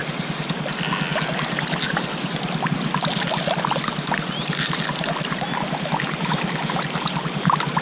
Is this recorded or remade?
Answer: recorded